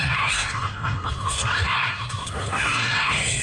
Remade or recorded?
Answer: remade